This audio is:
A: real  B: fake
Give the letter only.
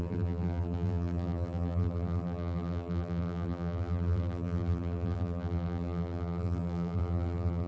B